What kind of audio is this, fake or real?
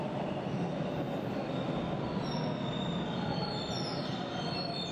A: real